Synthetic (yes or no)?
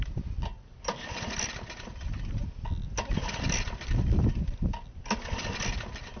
no